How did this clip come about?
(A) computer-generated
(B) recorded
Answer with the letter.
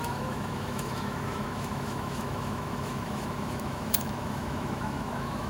A